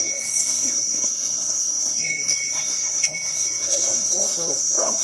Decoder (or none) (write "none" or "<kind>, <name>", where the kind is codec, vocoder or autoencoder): codec, SNAC